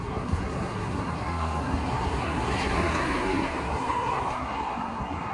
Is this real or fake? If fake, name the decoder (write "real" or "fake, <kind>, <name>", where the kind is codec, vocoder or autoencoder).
fake, codec, SNAC